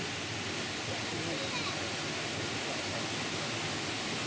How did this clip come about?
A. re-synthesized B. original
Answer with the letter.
B